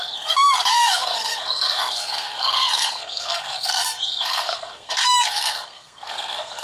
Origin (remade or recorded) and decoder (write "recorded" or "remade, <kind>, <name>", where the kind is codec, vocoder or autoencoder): remade, codec, SNAC